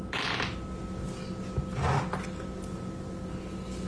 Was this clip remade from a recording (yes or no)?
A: no